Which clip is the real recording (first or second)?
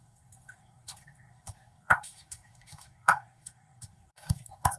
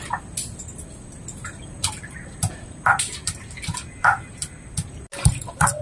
second